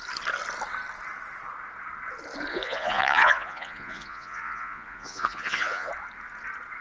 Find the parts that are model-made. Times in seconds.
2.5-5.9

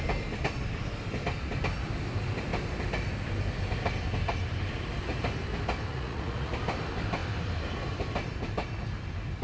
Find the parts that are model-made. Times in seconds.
5.9-6.5